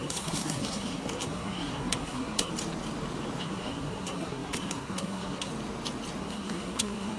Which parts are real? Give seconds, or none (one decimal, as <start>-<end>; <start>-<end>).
2.5-3.4; 5.5-6.2